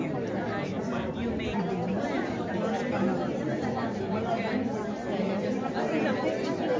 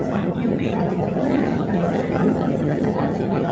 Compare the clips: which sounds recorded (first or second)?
first